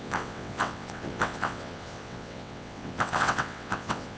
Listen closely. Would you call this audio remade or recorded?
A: remade